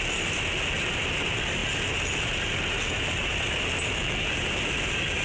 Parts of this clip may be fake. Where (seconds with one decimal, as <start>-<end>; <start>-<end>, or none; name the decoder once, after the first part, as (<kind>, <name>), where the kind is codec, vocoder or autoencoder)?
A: none